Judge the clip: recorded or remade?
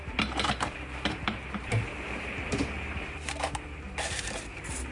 remade